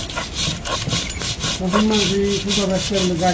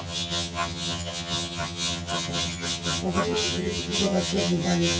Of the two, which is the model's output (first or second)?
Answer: second